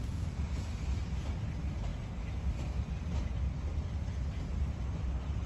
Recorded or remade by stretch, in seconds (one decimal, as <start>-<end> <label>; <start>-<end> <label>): 0.0-5.5 recorded